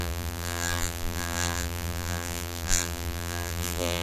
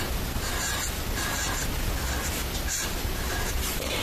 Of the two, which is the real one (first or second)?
second